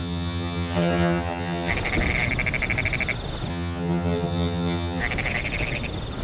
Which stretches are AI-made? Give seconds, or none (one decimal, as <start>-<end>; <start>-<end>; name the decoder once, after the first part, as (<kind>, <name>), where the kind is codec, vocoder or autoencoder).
0.0-1.7 (vocoder, HiFi-GAN); 3.5-5.0